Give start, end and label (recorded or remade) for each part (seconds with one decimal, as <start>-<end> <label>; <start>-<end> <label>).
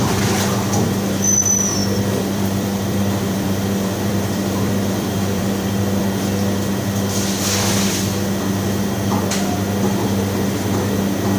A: 0.0-1.8 recorded; 1.8-6.2 remade; 6.2-11.4 recorded